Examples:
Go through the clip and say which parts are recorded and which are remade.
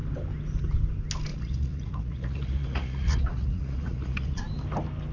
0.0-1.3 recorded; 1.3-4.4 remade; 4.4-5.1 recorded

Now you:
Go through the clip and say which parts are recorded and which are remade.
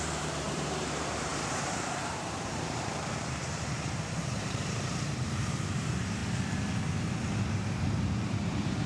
0.0-6.2 remade; 6.2-7.3 recorded; 7.3-8.9 remade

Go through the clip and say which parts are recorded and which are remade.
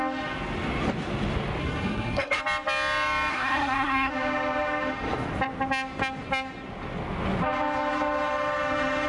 0.0-1.6 recorded; 1.6-2.4 remade; 2.4-3.3 recorded; 3.3-4.1 remade; 4.1-9.1 recorded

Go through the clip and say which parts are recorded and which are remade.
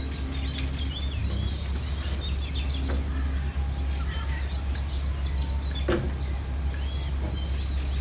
0.0-8.0 recorded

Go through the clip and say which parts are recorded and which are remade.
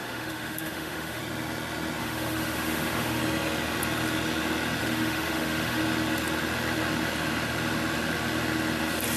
0.0-1.2 remade; 1.2-2.0 recorded; 2.0-3.2 remade; 3.2-4.8 recorded; 4.8-5.8 remade; 5.8-9.2 recorded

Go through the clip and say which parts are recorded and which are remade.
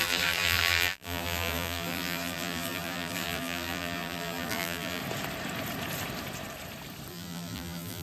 0.0-5.0 remade; 5.0-7.1 recorded; 7.1-8.0 remade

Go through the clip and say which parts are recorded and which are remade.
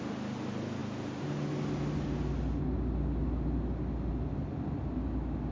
0.0-5.5 recorded